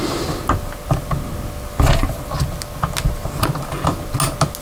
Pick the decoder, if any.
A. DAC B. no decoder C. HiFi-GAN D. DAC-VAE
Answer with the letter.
B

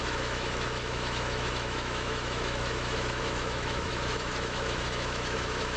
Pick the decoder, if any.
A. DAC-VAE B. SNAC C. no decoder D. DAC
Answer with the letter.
A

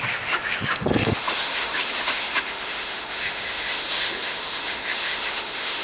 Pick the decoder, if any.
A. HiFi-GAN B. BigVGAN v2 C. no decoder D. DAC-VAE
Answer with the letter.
D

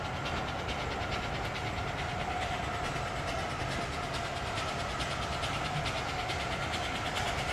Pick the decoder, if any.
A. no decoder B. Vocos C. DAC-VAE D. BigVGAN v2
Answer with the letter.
A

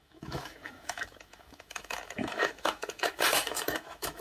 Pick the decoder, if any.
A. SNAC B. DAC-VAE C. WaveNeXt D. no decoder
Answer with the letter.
B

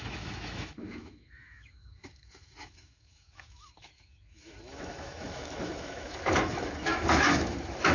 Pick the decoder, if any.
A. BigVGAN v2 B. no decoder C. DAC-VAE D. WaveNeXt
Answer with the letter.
C